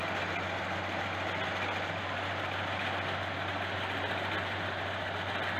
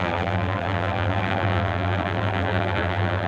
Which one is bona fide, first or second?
first